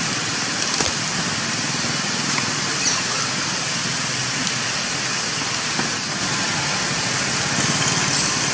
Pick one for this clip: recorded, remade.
recorded